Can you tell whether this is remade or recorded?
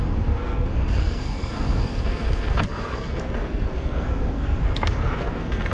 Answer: remade